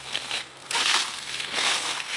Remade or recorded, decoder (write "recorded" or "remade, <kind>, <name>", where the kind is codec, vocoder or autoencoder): remade, codec, SNAC